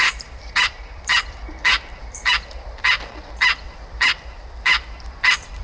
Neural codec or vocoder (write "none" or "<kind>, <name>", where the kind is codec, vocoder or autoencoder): vocoder, BigVGAN v2